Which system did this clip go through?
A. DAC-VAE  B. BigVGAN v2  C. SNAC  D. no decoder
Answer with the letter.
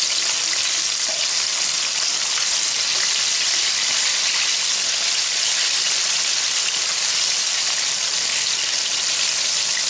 D